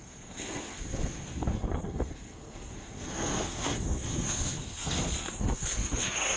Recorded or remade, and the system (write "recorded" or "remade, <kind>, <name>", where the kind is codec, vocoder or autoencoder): remade, codec, SNAC